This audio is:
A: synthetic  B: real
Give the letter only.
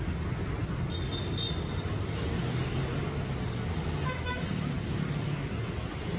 B